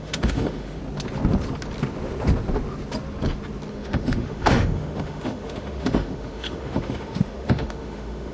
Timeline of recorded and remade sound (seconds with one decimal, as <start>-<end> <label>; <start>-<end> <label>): 0.0-0.8 remade; 0.8-3.7 recorded; 3.7-8.3 remade